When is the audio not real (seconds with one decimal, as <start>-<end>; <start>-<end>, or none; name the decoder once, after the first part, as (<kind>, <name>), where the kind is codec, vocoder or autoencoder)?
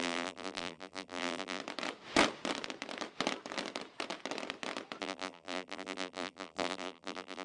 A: 0.0-1.6 (vocoder, BigVGAN v2); 5.0-7.4